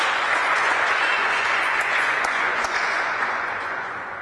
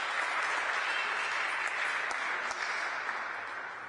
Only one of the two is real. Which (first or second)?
second